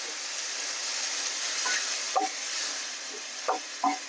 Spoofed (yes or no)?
no